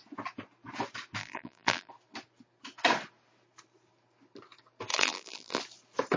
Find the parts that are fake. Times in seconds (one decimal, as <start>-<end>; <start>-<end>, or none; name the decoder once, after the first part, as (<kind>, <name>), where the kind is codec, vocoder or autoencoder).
1.2-1.9 (vocoder, BigVGAN v2); 4.9-5.6